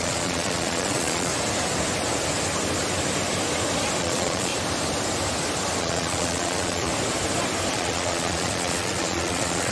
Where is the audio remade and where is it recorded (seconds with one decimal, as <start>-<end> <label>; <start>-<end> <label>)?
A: 0.0-1.3 remade; 1.3-4.0 recorded; 4.0-4.5 remade; 4.5-5.8 recorded; 5.8-6.9 remade; 6.9-7.7 recorded; 7.7-9.7 remade